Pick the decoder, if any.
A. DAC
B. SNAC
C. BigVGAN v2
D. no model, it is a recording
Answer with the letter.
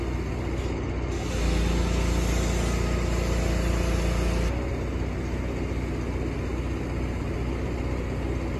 D